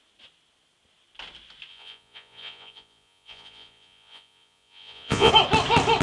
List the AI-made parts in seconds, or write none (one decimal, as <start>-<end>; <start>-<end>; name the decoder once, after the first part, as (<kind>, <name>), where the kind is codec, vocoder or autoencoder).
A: 1.7-5.3 (vocoder, Vocos)